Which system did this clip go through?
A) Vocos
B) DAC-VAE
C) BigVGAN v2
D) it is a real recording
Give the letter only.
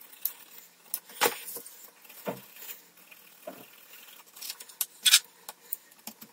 D